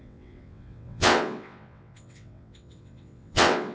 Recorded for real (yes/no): no